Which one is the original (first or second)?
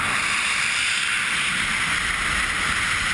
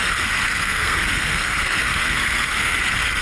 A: first